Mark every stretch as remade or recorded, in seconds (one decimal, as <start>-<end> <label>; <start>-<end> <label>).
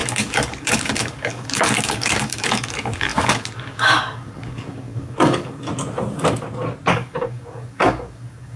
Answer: 0.0-5.7 remade; 5.7-6.9 recorded; 6.9-8.6 remade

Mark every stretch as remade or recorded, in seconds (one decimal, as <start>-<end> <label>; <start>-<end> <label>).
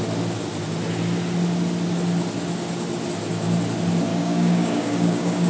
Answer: 0.0-4.1 recorded; 4.1-5.5 remade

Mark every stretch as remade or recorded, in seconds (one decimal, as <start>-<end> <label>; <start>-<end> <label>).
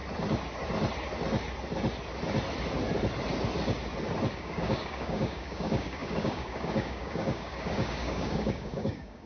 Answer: 0.0-4.3 recorded; 4.3-9.3 remade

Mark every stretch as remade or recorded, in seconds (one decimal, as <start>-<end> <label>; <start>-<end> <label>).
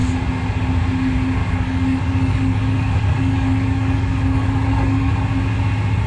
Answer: 0.0-1.4 recorded; 1.4-5.1 remade; 5.1-6.1 recorded